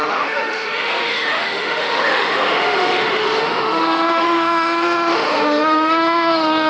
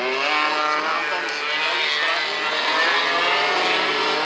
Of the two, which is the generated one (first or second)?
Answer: first